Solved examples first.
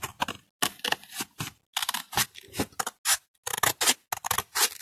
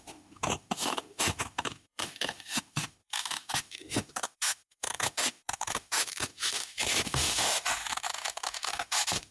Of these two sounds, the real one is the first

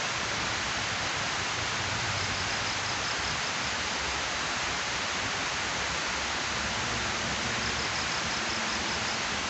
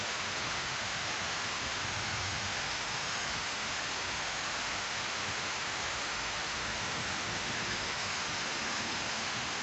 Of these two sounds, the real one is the first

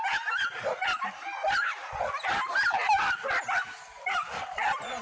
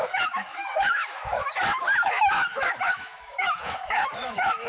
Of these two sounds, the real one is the first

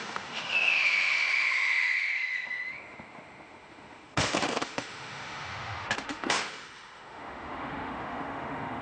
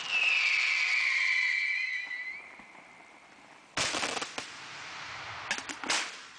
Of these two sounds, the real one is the second